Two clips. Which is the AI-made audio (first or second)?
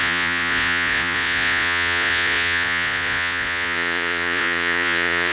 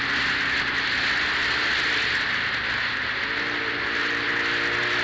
first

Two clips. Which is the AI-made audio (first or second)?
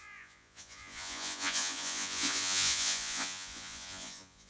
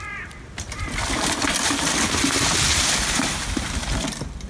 first